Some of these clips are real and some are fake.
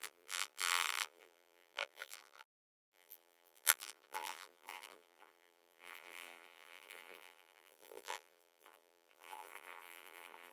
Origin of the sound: fake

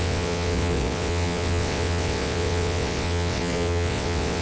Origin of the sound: fake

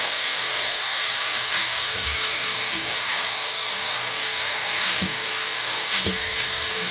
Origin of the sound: fake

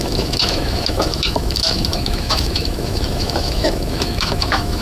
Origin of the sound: fake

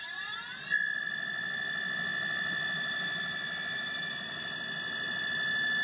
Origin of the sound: real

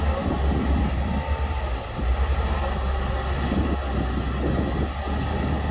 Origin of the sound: real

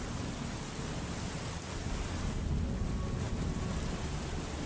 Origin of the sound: real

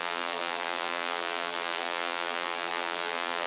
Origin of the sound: fake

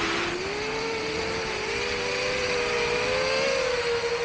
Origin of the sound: real